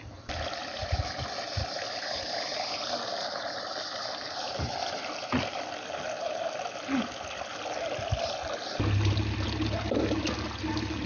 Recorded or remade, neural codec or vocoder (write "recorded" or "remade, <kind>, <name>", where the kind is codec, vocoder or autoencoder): recorded